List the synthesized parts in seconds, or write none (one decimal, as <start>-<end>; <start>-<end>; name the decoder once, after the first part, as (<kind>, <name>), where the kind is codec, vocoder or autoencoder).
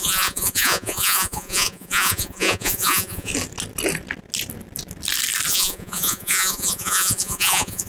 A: 0.0-3.3 (vocoder, Vocos); 5.5-7.9